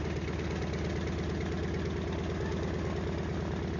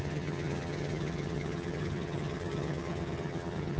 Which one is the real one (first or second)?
first